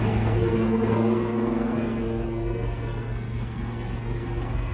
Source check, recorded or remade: remade